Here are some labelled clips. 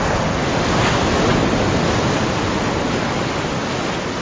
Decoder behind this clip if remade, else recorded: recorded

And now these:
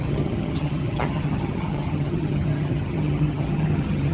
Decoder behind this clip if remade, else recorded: remade, vocoder, HiFi-GAN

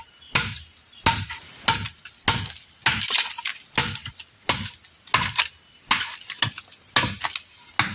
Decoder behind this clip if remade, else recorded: recorded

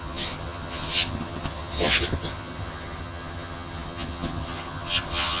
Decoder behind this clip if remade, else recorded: remade, vocoder, HiFi-GAN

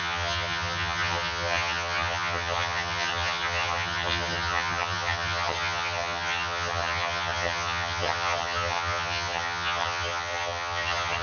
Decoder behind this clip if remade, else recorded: remade, vocoder, HiFi-GAN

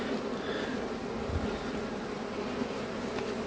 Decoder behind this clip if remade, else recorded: recorded